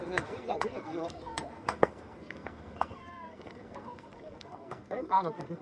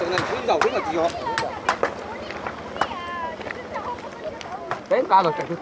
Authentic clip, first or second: second